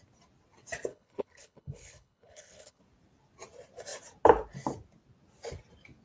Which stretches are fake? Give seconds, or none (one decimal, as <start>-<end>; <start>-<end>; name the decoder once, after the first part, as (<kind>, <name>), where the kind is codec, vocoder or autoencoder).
0.9-2.8 (codec, HILCodec)